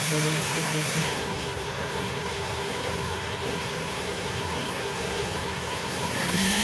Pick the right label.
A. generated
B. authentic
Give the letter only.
A